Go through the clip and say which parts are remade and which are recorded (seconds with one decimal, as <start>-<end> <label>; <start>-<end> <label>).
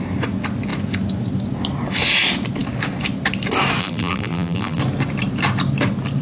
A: 0.0-3.8 recorded; 3.8-4.8 remade; 4.8-6.2 recorded